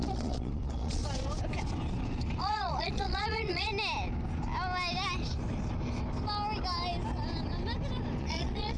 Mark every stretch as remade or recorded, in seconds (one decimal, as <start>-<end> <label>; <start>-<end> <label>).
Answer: 0.0-1.0 remade; 1.0-2.4 recorded; 2.4-3.7 remade; 3.7-8.2 recorded; 8.2-8.8 remade